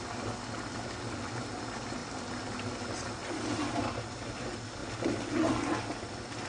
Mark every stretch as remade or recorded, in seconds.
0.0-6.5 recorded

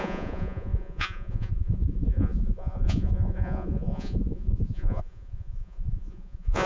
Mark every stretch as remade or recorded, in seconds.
0.0-6.7 remade

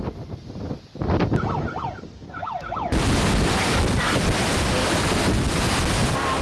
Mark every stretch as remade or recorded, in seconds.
0.0-6.4 recorded

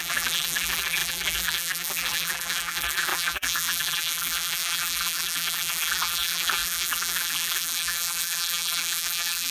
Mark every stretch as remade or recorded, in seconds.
0.0-9.5 remade

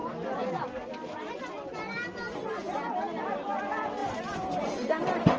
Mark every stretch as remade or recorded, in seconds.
0.0-5.4 recorded

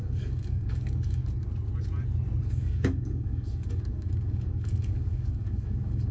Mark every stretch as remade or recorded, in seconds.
0.0-1.2 remade; 1.2-2.4 recorded; 2.4-6.1 remade